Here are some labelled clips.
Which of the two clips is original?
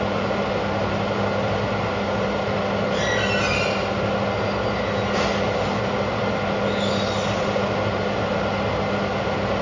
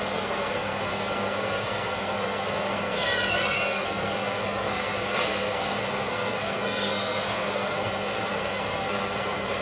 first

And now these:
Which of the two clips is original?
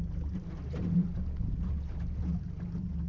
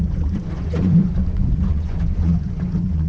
first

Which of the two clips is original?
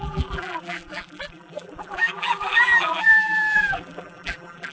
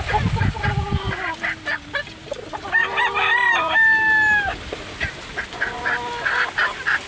second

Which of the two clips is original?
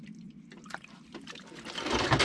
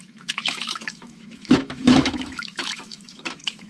first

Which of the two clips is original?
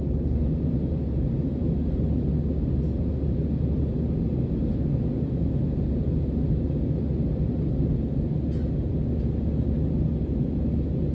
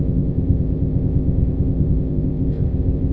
first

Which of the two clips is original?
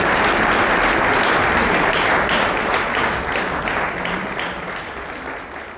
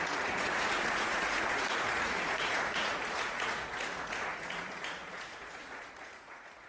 first